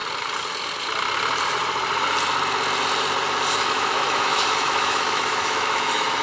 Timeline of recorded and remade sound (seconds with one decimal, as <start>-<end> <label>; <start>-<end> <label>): 0.0-3.7 recorded; 3.7-6.2 remade